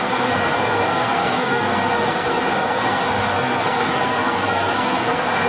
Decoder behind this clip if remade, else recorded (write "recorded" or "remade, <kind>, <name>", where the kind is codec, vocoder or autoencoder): remade, codec, SNAC